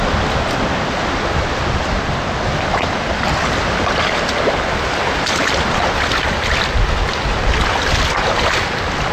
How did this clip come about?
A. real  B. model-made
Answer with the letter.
A